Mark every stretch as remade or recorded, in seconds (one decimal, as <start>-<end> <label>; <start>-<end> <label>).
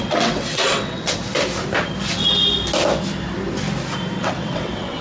0.0-1.2 remade; 1.2-4.2 recorded; 4.2-5.0 remade